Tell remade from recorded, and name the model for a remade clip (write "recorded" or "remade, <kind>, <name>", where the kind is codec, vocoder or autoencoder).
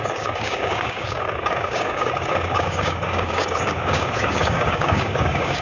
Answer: remade, codec, DAC